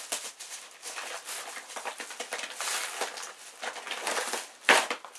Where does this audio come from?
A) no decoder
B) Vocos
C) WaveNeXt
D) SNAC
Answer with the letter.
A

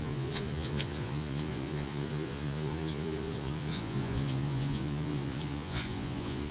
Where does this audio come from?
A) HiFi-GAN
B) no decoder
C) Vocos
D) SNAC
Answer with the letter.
C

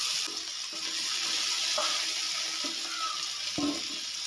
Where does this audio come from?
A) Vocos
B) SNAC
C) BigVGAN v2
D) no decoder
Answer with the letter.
D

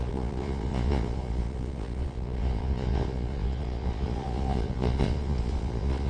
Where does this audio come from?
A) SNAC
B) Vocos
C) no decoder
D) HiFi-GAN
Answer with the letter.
B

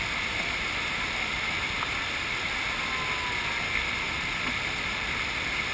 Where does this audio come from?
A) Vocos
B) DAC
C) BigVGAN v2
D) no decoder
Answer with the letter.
D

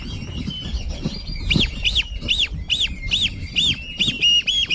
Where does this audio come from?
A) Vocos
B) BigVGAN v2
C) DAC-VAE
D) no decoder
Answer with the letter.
D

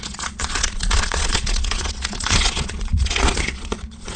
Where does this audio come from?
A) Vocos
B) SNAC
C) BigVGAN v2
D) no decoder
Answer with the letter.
A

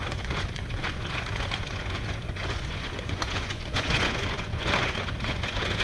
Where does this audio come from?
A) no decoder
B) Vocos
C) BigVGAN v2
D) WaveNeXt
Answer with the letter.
B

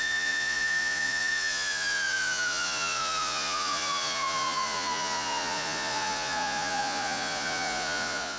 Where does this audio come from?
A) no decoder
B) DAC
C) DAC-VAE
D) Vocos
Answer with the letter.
D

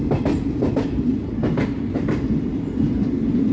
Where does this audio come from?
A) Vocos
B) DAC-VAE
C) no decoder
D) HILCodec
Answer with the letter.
C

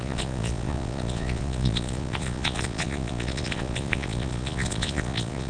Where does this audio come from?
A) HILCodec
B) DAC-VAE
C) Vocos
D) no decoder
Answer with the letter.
C